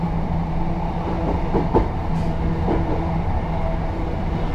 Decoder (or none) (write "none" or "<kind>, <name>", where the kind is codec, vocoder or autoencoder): none